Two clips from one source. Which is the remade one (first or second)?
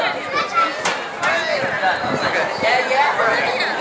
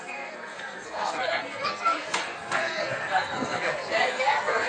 second